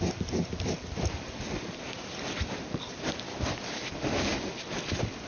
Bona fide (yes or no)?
yes